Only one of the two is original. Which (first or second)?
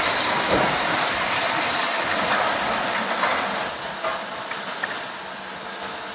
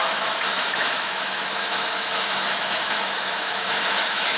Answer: first